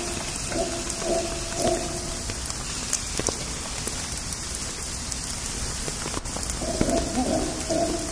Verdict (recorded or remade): recorded